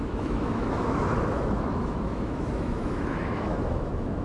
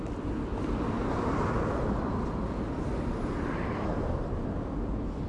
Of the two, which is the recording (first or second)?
second